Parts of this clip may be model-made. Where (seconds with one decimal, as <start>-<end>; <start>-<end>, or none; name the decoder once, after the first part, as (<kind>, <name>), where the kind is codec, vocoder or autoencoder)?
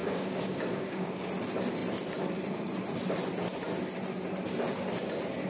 0.0-1.3 (codec, DAC)